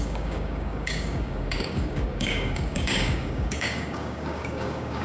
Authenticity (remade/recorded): remade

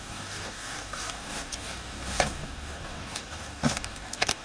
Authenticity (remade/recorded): remade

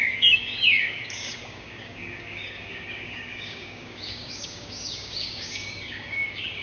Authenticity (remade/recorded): remade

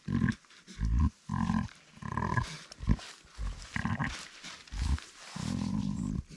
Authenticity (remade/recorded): recorded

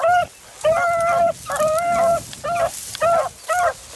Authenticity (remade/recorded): recorded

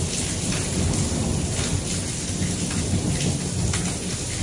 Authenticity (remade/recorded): recorded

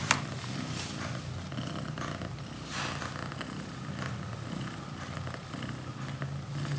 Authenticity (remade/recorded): recorded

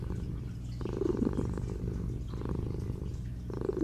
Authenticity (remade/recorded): recorded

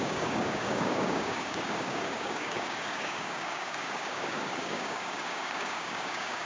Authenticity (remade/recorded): remade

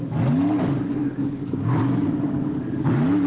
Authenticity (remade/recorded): remade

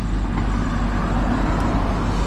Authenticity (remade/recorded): recorded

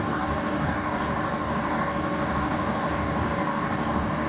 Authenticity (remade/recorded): remade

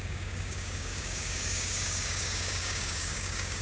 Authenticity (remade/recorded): remade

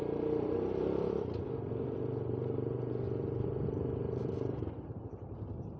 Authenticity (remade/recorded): recorded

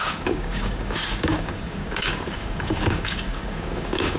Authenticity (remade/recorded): remade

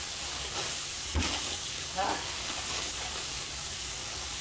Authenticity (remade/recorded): remade